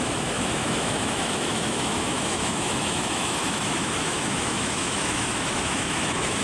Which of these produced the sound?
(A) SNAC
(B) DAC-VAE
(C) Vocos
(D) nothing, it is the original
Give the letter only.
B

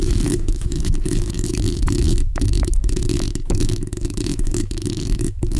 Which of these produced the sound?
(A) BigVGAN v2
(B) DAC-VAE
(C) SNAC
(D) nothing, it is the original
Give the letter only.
B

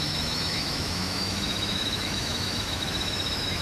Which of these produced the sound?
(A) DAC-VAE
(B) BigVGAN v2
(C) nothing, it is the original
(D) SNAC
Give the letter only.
A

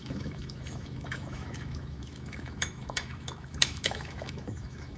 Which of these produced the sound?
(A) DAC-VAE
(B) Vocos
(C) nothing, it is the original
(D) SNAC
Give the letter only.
A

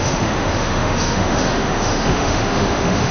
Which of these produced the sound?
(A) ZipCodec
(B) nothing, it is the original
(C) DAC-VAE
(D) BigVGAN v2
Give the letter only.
C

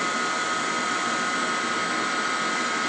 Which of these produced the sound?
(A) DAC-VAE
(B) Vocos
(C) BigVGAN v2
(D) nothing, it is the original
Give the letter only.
D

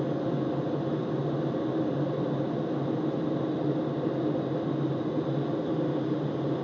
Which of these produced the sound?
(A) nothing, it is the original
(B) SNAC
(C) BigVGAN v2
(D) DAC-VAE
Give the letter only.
A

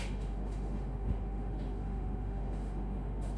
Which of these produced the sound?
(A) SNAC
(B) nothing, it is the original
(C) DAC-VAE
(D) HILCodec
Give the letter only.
C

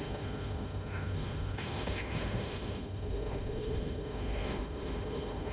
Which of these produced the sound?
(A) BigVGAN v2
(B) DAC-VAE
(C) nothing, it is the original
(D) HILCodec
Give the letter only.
B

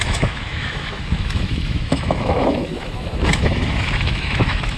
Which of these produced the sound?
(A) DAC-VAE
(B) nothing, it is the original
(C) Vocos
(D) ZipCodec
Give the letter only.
A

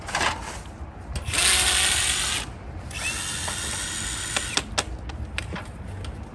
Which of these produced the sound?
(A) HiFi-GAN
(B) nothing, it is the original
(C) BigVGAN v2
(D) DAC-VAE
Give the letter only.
B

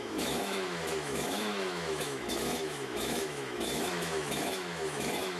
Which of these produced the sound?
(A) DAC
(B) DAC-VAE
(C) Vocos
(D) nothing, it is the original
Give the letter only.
B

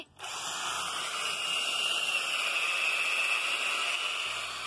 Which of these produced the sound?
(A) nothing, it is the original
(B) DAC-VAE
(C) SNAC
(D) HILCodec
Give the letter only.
A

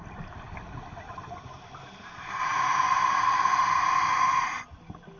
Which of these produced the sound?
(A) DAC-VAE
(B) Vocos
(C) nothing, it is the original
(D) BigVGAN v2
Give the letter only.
C